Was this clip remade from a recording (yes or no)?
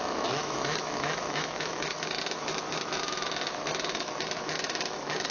yes